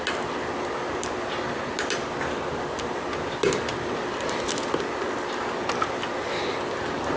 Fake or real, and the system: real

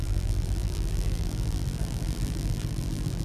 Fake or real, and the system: fake, vocoder, BigVGAN v2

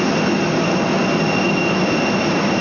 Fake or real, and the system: real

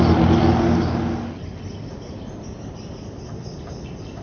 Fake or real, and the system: real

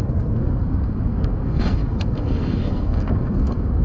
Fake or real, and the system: fake, codec, SNAC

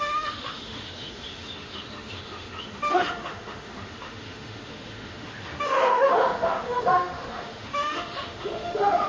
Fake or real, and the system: fake, autoencoder, DAC-VAE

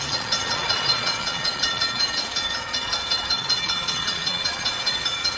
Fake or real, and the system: fake, vocoder, Vocos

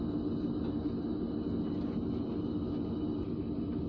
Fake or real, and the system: real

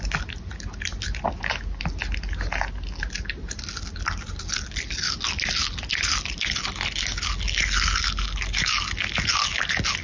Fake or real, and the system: real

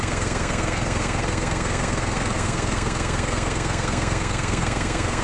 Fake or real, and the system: fake, codec, SNAC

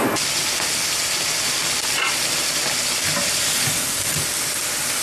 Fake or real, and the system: real